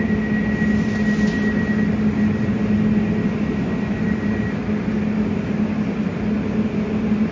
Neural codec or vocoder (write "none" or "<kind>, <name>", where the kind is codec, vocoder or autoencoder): none